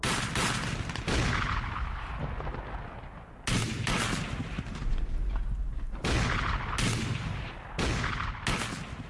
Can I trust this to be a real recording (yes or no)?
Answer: yes